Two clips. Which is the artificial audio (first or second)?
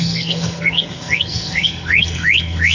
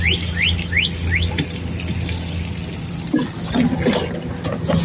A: first